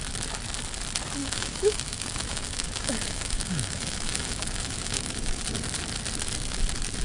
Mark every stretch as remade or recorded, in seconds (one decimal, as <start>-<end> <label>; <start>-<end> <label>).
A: 0.0-1.2 recorded; 1.2-5.4 remade; 5.4-7.0 recorded